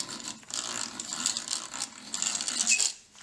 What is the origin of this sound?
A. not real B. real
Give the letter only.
B